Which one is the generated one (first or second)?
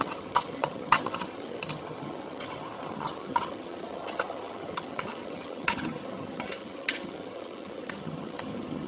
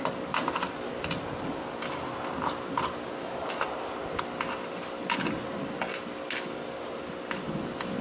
first